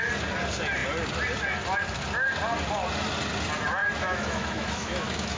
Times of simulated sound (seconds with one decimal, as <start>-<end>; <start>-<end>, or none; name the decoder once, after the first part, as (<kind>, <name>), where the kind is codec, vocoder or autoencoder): 3.8-5.4 (autoencoder, DAC-VAE)